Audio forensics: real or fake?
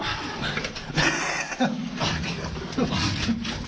real